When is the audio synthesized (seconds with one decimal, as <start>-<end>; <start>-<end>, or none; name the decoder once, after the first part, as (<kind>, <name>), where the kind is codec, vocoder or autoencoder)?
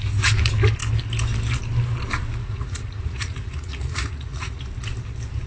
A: 2.4-4.6 (vocoder, Vocos)